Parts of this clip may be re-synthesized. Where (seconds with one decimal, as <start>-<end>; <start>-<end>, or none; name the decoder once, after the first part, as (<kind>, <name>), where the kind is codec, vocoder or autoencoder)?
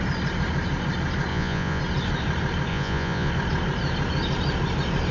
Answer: 1.3-1.8 (vocoder, Vocos); 2.7-3.3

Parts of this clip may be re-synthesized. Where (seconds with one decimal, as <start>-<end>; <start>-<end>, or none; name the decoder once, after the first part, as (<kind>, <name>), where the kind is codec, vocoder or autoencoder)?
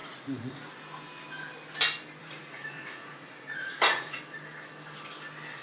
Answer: 0.0-0.8 (vocoder, Vocos); 2.2-4.2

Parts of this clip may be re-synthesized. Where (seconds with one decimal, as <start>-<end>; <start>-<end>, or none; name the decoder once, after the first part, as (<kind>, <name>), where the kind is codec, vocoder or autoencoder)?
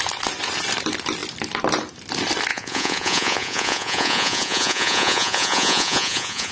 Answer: 2.5-6.5 (vocoder, Vocos)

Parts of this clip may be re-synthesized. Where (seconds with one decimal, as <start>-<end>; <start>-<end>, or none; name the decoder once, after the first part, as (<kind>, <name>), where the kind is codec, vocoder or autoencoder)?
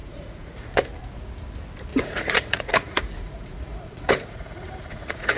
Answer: 0.0-0.8 (vocoder, Vocos); 1.9-5.4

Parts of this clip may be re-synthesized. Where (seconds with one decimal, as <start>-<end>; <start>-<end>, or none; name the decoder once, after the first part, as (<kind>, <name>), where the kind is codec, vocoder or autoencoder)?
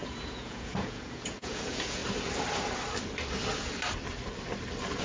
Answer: 0.0-2.0 (vocoder, Vocos)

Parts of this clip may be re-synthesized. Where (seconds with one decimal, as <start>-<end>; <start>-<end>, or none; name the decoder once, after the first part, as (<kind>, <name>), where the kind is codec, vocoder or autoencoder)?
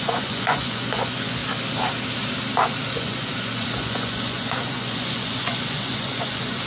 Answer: 0.0-1.4 (vocoder, Vocos); 2.9-6.7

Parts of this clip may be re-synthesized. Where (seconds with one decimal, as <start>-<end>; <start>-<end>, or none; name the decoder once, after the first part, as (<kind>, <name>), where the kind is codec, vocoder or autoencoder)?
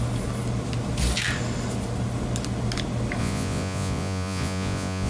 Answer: 3.2-5.1 (vocoder, Vocos)